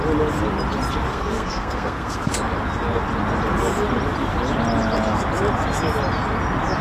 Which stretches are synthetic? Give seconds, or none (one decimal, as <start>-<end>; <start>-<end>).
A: 1.1-2.4